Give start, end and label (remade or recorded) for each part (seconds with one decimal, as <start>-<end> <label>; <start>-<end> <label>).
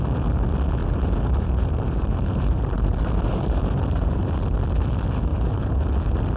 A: 0.0-0.8 recorded; 0.8-4.6 remade; 4.6-5.3 recorded; 5.3-5.9 remade; 5.9-6.4 recorded